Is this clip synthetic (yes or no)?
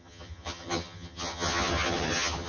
yes